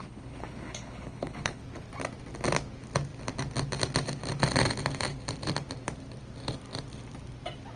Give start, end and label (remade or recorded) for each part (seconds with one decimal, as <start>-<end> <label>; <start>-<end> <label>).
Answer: 0.0-1.6 remade; 1.6-7.8 recorded